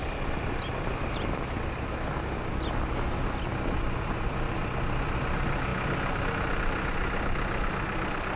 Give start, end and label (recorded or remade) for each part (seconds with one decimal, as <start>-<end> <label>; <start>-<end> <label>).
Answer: 0.0-8.4 recorded